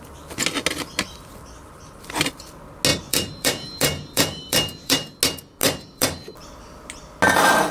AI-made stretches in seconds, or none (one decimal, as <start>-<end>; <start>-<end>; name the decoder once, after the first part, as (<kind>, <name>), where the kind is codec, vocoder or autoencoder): 2.9-5.1 (vocoder, BigVGAN v2); 5.6-6.6